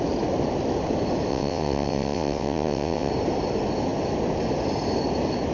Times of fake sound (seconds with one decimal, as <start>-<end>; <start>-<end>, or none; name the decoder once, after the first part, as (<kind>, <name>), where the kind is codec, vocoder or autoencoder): 1.3-3.1 (vocoder, WaveNeXt)